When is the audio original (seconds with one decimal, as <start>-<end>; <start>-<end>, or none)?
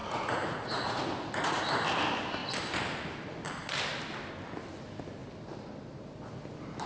1.6-6.9